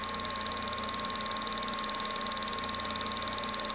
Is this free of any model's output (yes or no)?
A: yes